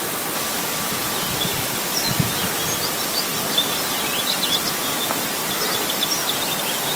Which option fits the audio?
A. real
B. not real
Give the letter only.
A